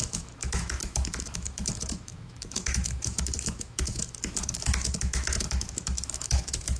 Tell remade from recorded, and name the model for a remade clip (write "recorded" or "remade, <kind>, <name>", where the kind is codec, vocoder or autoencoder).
remade, autoencoder, DAC-VAE